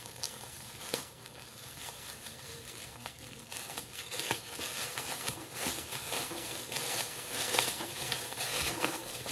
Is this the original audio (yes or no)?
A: no